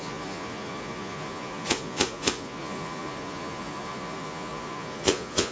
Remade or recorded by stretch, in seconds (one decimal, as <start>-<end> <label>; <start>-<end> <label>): 0.0-5.5 remade